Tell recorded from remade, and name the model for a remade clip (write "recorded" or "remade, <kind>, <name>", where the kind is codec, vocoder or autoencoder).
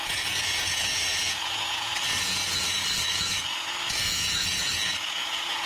remade, vocoder, Vocos